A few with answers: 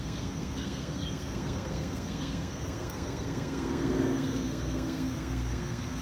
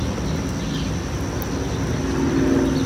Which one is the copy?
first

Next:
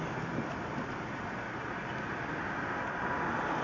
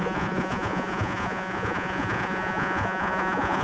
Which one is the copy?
second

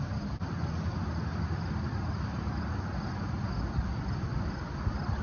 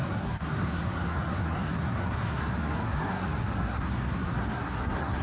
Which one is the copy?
second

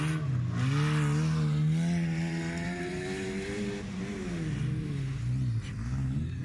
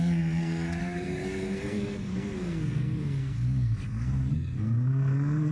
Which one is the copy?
second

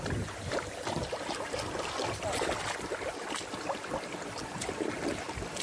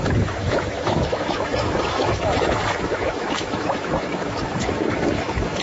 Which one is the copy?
second